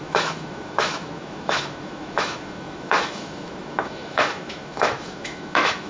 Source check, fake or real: fake